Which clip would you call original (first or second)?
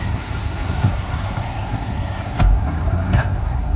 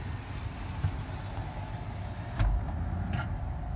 second